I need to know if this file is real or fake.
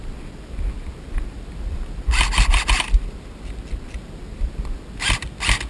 real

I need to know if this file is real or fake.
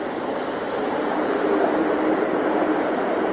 fake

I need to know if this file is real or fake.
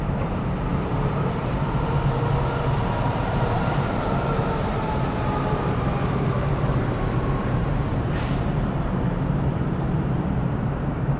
fake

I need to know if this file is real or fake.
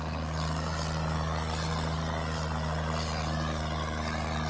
real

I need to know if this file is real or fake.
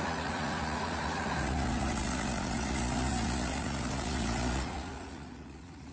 fake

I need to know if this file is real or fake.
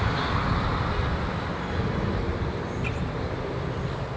real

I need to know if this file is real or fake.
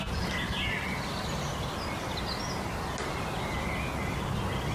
real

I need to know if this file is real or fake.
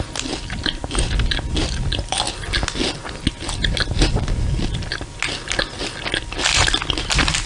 real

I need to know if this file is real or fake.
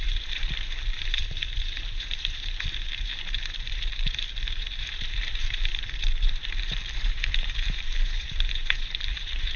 fake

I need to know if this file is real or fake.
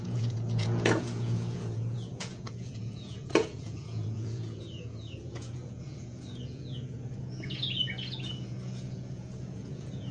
fake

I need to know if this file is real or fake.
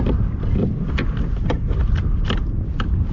real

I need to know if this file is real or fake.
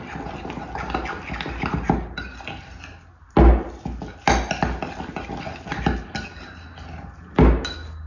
real